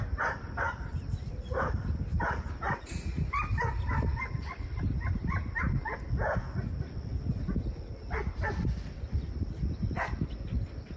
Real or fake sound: real